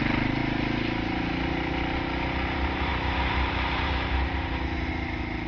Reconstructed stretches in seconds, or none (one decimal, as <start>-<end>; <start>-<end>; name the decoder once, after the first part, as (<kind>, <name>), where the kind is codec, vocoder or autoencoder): none